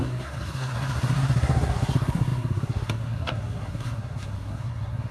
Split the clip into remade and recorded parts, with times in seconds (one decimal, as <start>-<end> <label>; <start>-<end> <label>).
0.0-5.1 remade